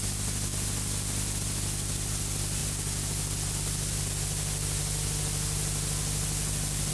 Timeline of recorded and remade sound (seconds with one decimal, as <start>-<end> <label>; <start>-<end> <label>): 0.0-6.9 recorded